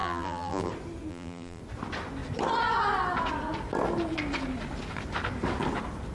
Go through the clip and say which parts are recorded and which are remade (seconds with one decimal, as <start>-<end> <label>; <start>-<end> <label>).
0.0-0.7 remade; 0.7-1.1 recorded; 1.1-1.6 remade; 1.6-6.1 recorded